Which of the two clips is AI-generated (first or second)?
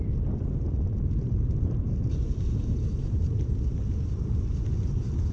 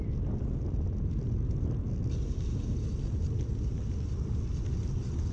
first